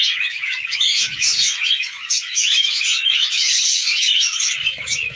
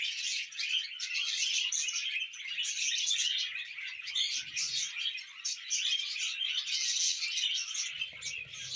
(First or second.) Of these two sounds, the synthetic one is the first